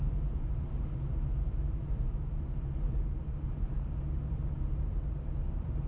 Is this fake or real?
fake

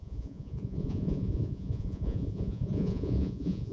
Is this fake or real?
fake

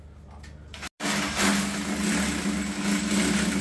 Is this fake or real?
real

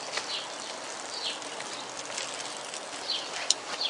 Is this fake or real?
real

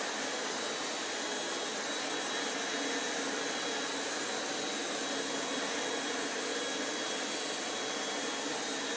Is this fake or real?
real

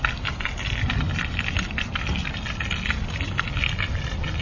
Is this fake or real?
real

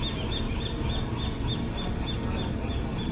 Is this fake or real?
real